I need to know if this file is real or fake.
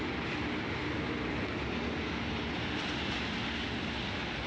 real